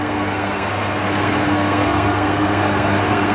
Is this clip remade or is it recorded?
remade